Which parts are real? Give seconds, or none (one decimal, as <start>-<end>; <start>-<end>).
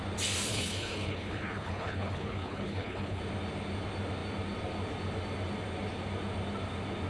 0.0-0.5; 3.2-7.1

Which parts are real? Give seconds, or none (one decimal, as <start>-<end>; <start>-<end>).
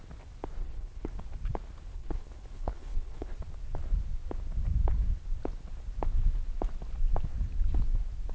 0.0-0.6; 1.1-1.9; 3.4-8.3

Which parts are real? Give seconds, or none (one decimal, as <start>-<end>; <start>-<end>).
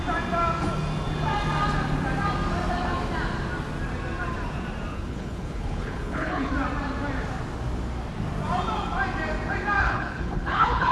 0.0-4.9; 6.5-9.8